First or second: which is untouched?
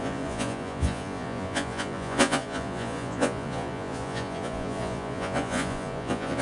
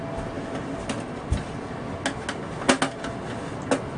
second